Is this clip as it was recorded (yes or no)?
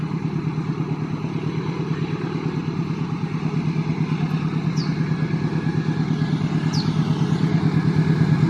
yes